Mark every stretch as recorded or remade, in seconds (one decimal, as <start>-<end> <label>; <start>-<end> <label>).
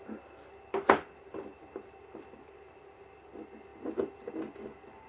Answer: 0.0-5.1 recorded